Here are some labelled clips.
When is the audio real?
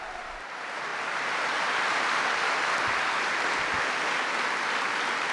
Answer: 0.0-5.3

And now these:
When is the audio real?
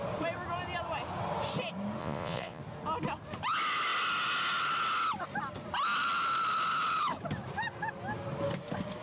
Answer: 0.0-2.0; 2.6-9.0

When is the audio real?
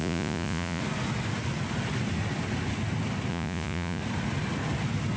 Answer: 0.8-3.3; 4.0-5.2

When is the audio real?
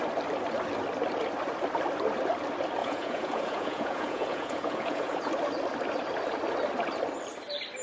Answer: 0.0-2.8; 5.3-7.8